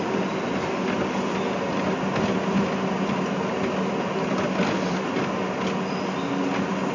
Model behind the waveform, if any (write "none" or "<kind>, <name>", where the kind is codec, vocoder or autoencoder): none